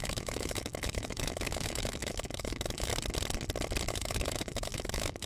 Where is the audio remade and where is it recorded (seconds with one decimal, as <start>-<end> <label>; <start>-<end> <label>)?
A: 0.0-2.9 remade; 2.9-3.9 recorded; 3.9-5.3 remade

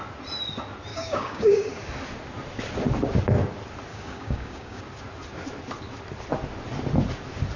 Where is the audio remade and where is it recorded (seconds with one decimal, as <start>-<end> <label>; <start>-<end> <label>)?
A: 0.0-0.9 recorded; 0.9-1.7 remade; 1.7-3.9 recorded; 3.9-4.8 remade; 4.8-7.6 recorded